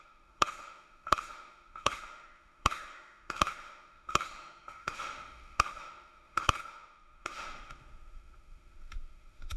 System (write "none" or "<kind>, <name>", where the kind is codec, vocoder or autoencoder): autoencoder, DAC-VAE